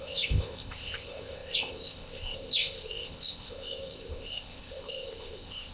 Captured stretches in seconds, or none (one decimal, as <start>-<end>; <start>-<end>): none